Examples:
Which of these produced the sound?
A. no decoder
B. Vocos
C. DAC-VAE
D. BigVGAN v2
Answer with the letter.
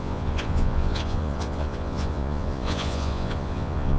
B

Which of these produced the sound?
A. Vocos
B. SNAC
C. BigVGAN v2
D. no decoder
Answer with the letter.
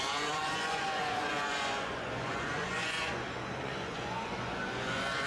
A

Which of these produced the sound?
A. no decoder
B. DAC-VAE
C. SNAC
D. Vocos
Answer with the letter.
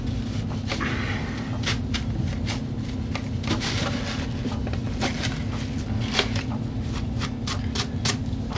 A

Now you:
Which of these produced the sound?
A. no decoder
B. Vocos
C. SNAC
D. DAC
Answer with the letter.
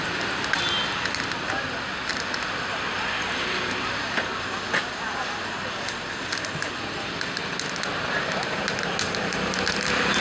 A